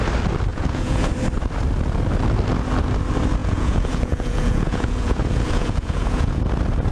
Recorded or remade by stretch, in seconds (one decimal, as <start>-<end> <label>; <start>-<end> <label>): 0.0-0.5 recorded; 0.5-1.1 remade; 1.1-3.4 recorded; 3.4-6.4 remade; 6.4-6.9 recorded

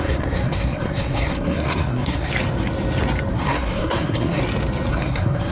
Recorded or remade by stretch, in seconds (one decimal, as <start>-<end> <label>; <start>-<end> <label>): 0.0-2.3 remade; 2.3-3.3 recorded; 3.3-4.4 remade; 4.4-4.9 recorded; 4.9-5.5 remade

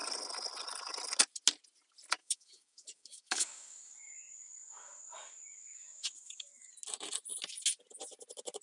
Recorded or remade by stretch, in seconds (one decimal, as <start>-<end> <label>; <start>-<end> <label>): 0.0-2.2 recorded; 2.2-6.7 remade; 6.7-8.6 recorded

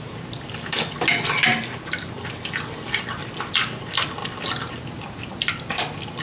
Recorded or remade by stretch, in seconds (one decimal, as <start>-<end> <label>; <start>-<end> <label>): 0.0-6.2 recorded